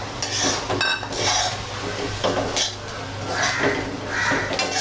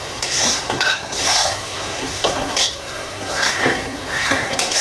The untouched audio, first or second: first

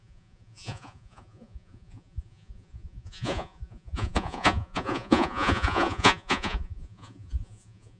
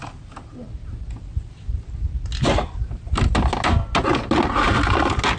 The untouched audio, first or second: second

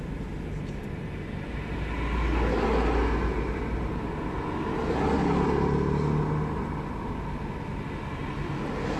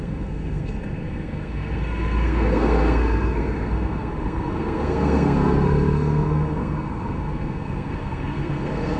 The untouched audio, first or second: first